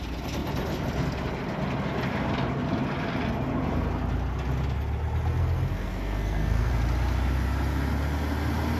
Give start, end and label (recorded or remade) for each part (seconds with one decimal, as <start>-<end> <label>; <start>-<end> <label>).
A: 0.0-5.4 recorded; 5.4-6.7 remade; 6.7-8.8 recorded